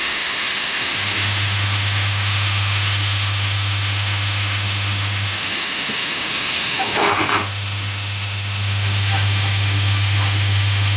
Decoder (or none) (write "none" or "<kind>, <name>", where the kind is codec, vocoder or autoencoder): autoencoder, DAC-VAE